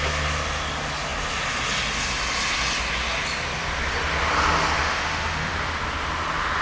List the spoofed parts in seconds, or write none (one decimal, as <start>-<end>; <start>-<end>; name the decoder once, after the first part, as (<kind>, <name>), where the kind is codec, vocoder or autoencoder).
4.8-5.5 (autoencoder, DAC-VAE)